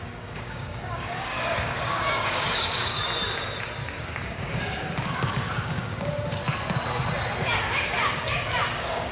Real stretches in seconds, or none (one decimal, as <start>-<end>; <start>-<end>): 3.0-4.0; 6.4-7.4